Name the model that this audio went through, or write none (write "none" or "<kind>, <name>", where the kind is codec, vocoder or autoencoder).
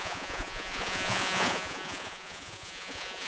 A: vocoder, Vocos